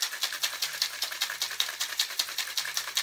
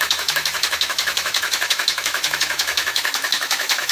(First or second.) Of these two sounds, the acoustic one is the first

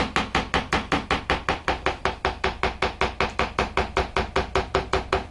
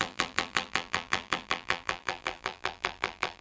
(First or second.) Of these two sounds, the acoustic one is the first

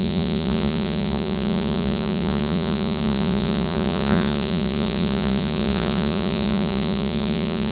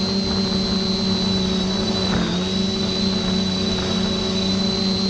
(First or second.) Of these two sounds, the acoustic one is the second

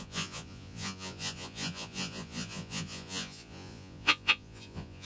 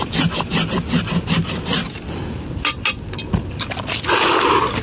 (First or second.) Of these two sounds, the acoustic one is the second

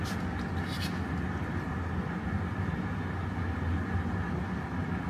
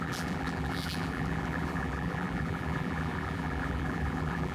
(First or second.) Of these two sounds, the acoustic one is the first